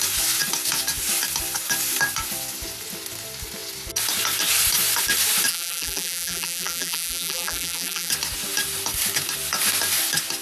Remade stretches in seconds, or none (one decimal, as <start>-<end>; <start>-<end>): 5.5-8.1